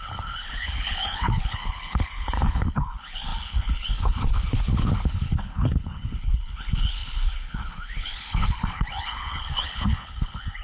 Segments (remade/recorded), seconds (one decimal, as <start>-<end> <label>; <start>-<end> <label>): 0.0-10.6 remade